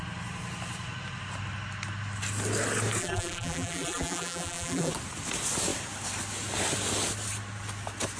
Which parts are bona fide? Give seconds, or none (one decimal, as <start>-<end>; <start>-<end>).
0.0-3.0; 4.9-8.2